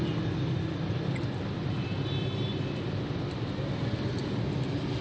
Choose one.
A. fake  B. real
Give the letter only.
B